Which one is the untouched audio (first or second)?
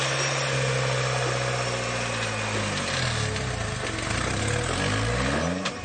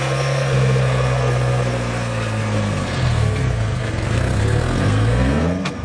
first